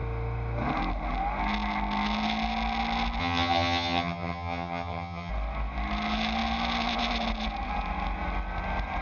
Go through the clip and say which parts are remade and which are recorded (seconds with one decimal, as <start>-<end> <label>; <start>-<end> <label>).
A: 0.0-3.2 recorded; 3.2-5.3 remade; 5.3-9.0 recorded